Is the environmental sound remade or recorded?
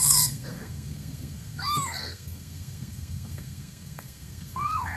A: remade